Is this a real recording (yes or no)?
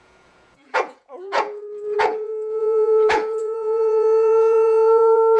no